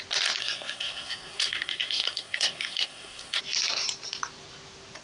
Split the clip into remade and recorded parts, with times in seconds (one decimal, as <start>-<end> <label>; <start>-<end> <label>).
0.0-0.4 recorded; 0.4-3.4 remade; 3.4-5.0 recorded